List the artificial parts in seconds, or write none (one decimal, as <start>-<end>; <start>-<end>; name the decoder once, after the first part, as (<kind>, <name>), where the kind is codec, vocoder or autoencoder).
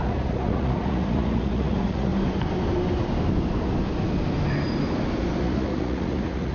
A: 0.0-2.1 (vocoder, Vocos); 5.4-6.5